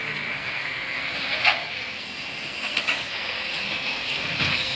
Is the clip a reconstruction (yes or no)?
yes